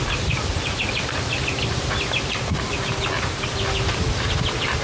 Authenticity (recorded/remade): recorded